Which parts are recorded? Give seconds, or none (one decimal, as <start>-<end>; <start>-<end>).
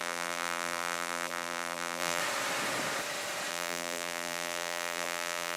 2.2-3.5